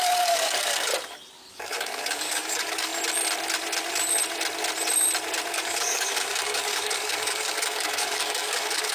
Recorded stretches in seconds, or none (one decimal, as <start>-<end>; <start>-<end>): 0.9-1.5; 2.9-5.5